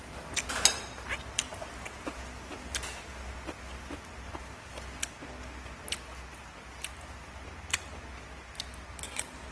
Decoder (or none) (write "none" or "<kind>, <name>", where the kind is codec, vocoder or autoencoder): none